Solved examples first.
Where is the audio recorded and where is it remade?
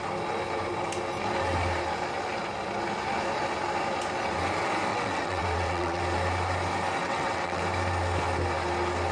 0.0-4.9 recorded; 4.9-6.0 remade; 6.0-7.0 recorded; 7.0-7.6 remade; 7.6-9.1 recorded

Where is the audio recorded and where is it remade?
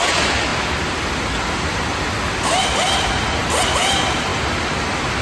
0.0-5.2 recorded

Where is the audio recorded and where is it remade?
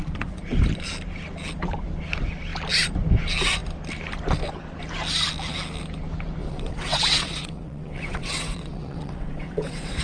0.0-6.4 recorded; 6.4-10.0 remade